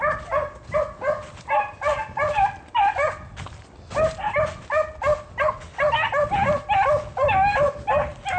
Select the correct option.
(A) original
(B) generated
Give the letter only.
A